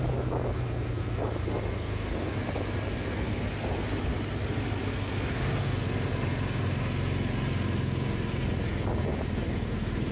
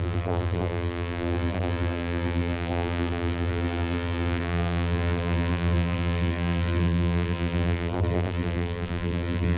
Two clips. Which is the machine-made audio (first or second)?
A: second